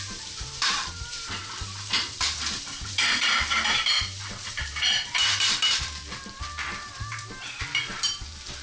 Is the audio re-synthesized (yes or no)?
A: yes